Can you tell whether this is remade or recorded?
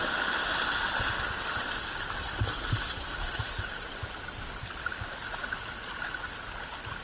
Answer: recorded